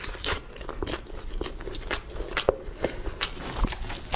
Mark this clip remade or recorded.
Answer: remade